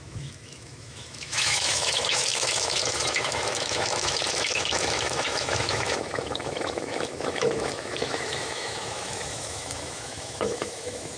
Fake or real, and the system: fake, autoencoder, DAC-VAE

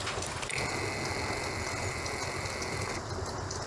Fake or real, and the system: real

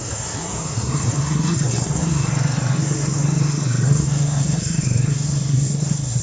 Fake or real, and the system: fake, codec, SNAC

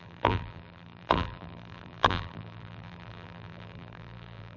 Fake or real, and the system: fake, vocoder, BigVGAN v2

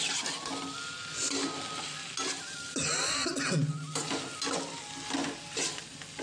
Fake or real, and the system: real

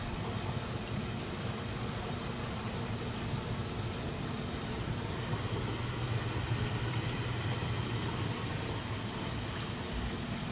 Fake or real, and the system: real